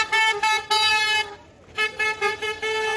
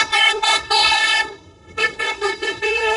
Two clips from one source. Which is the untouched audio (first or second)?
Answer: first